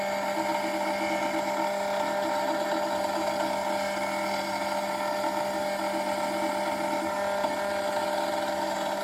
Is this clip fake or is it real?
real